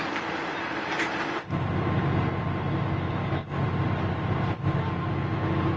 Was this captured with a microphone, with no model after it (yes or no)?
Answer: yes